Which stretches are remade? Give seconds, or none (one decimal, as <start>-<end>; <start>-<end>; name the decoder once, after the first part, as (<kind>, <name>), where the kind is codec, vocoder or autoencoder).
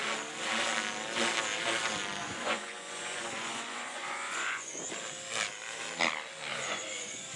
2.2-4.9 (vocoder, Vocos); 6.5-7.4